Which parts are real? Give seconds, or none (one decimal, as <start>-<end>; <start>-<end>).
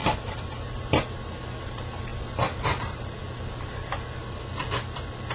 2.1-2.8